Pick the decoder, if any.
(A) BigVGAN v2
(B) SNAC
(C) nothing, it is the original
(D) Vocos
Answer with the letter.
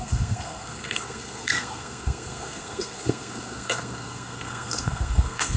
B